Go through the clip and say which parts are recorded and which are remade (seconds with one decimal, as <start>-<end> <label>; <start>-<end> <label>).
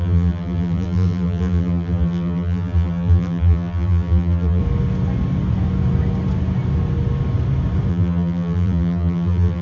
0.0-4.6 remade; 4.6-7.9 recorded; 7.9-9.6 remade